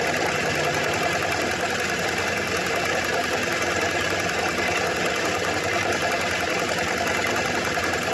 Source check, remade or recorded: recorded